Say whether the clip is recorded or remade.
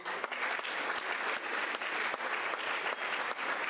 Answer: remade